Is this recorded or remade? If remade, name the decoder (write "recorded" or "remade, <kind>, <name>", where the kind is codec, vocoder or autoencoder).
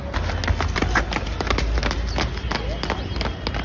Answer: recorded